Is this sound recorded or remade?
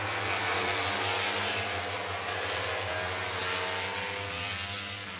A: recorded